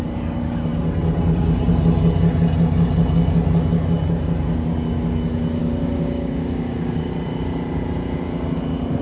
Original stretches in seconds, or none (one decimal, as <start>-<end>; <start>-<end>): 0.0-5.6; 7.1-9.0